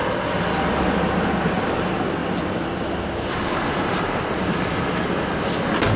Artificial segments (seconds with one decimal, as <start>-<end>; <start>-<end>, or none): none